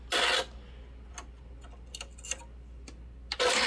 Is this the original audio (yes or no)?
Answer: yes